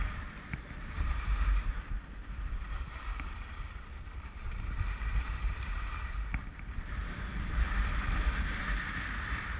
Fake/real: fake